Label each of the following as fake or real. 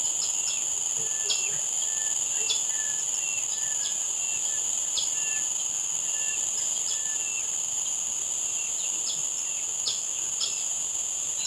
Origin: real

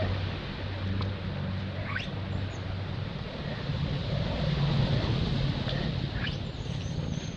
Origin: real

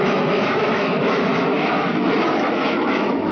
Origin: fake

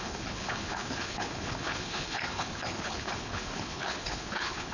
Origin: fake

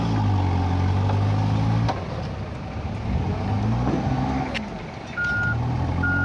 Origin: real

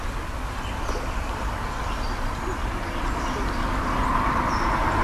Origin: real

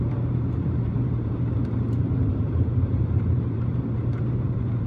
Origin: fake